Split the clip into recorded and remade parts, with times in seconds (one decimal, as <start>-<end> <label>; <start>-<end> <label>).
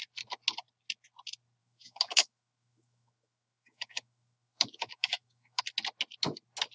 0.0-1.6 recorded; 1.6-5.6 remade; 5.6-6.7 recorded